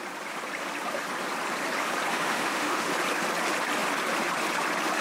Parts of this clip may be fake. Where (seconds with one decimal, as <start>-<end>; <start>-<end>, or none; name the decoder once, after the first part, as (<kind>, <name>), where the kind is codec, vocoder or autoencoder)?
2.1-2.9 (autoencoder, DAC-VAE)

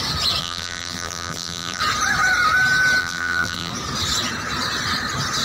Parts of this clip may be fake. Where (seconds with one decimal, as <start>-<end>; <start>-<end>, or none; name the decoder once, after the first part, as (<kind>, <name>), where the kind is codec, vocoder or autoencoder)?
0.4-1.8 (vocoder, BigVGAN v2); 3.0-3.7